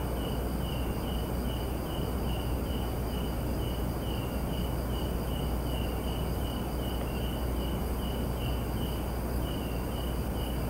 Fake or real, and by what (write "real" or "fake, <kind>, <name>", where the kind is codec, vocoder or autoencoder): real